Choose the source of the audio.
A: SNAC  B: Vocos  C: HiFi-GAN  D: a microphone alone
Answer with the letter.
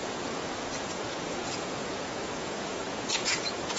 B